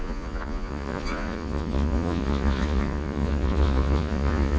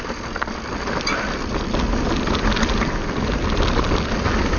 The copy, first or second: first